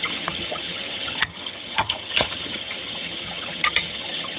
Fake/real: fake